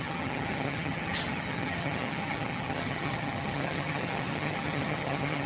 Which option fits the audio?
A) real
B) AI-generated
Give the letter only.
B